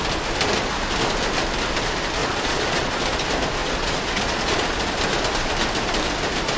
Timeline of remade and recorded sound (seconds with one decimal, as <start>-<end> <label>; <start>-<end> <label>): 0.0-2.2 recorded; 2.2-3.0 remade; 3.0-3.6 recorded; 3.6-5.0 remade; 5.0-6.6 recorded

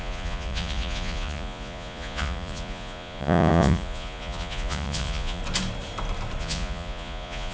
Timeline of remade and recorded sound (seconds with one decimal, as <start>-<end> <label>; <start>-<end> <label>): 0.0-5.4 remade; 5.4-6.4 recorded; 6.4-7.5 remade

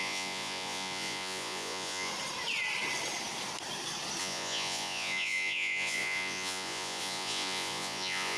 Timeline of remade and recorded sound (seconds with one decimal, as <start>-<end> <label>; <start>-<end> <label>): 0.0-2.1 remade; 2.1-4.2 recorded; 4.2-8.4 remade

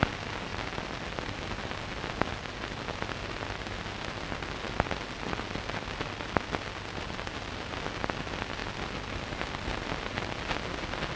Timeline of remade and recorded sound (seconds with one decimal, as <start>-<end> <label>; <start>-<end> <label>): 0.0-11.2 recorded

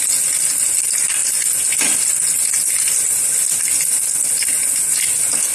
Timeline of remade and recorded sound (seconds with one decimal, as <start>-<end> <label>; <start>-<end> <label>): 0.0-5.5 recorded